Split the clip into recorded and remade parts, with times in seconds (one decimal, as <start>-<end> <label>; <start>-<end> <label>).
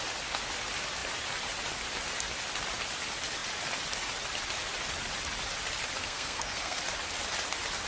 0.0-6.0 recorded; 6.0-6.8 remade; 6.8-7.9 recorded